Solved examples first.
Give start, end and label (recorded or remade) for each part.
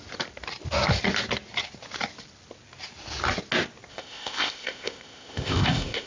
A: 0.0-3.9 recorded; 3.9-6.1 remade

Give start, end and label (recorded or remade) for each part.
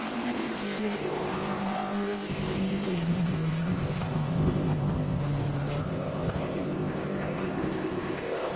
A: 0.0-5.2 remade; 5.2-5.8 recorded; 5.8-8.6 remade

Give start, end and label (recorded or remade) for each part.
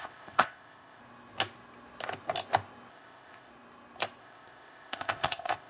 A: 0.0-1.0 remade; 1.0-2.9 recorded; 2.9-3.5 remade; 3.5-4.2 recorded; 4.2-5.7 remade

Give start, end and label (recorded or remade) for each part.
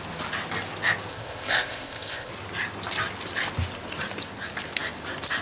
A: 0.0-1.1 recorded; 1.1-2.3 remade; 2.3-5.4 recorded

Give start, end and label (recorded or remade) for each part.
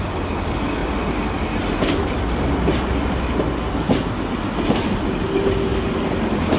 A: 0.0-6.6 recorded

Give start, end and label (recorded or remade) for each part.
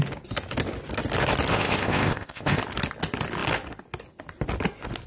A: 0.0-1.5 recorded; 1.5-2.6 remade; 2.6-5.1 recorded